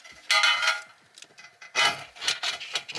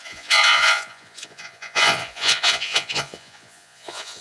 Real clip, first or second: first